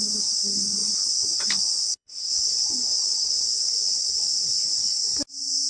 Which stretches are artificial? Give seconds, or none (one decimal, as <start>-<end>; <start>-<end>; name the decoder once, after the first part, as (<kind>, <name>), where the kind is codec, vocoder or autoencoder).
0.0-5.0 (codec, HILCodec)